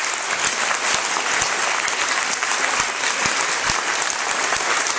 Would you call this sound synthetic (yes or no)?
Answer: no